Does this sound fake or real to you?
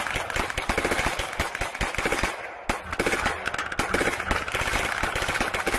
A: real